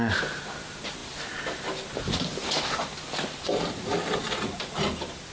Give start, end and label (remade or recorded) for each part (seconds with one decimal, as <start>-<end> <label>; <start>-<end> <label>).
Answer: 0.0-5.3 recorded